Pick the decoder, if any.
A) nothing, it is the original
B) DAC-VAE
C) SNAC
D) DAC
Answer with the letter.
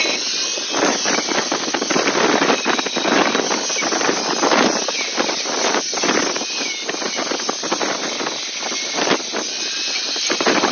A